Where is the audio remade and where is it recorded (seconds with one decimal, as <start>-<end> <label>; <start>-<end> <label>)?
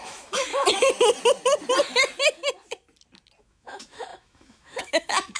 0.0-0.5 remade; 0.5-3.4 recorded; 3.4-5.4 remade